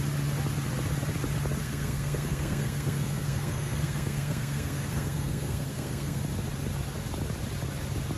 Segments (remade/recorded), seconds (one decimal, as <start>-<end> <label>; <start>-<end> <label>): 0.0-1.6 recorded; 1.6-6.2 remade; 6.2-8.2 recorded